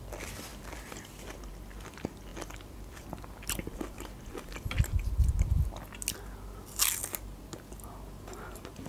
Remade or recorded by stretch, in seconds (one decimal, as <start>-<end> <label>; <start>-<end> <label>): 0.0-8.9 recorded